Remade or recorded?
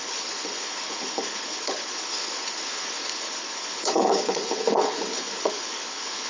remade